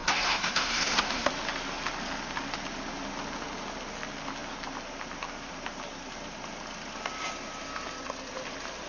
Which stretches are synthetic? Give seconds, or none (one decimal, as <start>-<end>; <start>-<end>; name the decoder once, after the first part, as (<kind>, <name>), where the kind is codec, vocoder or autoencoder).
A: 0.0-1.3 (codec, SNAC)